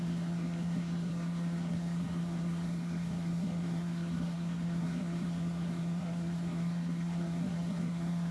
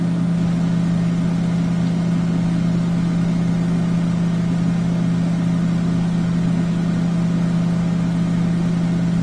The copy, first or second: first